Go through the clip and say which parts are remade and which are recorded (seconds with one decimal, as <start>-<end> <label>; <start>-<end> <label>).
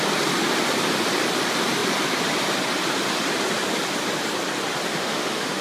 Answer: 0.0-4.9 recorded; 4.9-5.6 remade